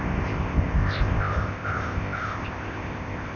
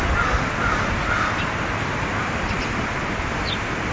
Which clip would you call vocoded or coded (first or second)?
first